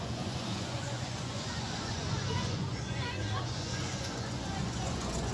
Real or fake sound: fake